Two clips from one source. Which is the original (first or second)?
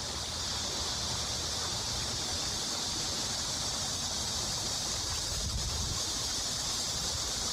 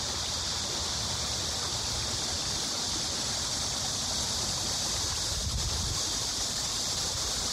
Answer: first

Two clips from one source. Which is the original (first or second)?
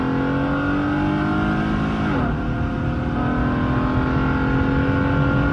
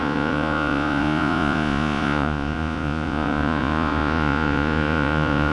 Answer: first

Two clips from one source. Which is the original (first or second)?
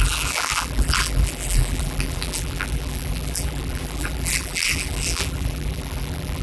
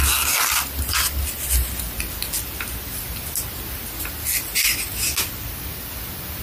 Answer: second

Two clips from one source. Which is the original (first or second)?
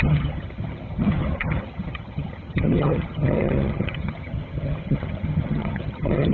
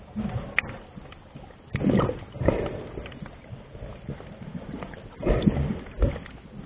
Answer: second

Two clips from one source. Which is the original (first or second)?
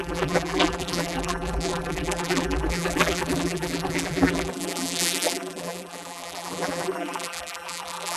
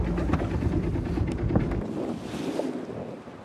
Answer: second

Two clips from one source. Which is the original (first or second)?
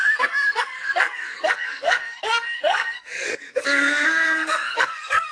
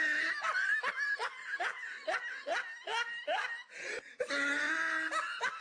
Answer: second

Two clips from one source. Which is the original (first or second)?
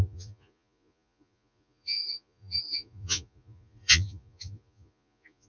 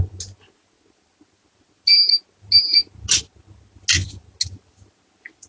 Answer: second